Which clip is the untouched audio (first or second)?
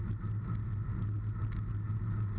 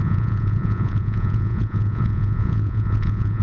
first